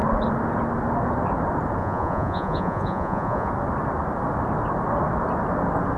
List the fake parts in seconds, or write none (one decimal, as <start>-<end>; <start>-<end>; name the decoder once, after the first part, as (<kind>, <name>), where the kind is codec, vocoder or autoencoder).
1.8-3.5 (vocoder, Vocos)